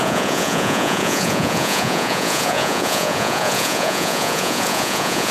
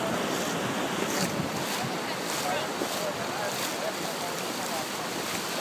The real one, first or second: second